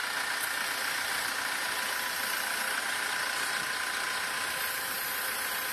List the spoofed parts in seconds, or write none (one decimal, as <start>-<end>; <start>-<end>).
none